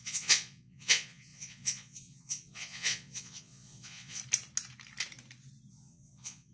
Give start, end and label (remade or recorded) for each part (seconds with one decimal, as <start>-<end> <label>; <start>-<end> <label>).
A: 0.0-4.2 remade; 4.2-5.7 recorded; 5.7-6.5 remade